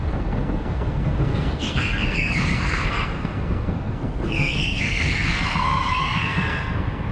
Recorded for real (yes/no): no